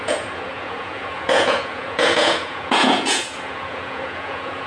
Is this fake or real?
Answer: fake